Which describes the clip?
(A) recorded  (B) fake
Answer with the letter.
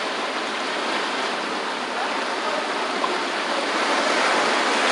A